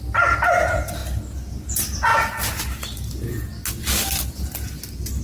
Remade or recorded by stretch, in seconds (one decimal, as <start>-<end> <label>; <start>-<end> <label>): 0.0-5.2 recorded